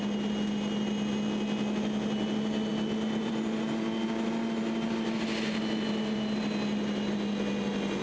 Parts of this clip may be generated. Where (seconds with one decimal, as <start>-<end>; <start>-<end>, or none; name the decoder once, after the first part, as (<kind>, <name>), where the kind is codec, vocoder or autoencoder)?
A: none